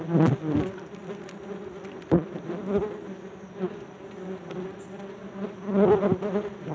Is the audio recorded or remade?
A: recorded